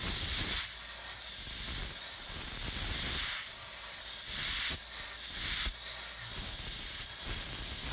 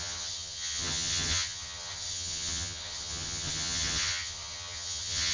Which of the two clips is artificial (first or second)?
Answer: second